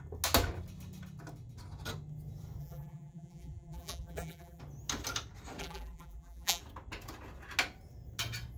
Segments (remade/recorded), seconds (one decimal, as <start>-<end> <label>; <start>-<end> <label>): 0.0-2.6 recorded; 2.6-4.6 remade; 4.6-5.6 recorded; 5.6-6.6 remade; 6.6-8.6 recorded